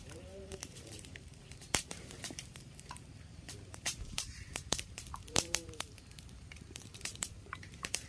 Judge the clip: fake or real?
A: fake